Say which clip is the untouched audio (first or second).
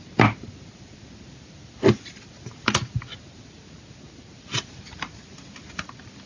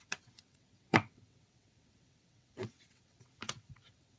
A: first